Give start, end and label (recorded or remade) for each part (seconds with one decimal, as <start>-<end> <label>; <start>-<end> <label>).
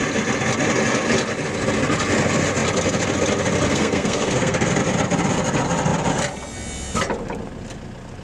0.0-3.7 recorded; 3.7-4.7 remade; 4.7-8.2 recorded